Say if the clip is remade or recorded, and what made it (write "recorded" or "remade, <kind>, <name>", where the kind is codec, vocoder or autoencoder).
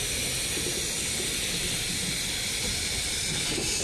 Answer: recorded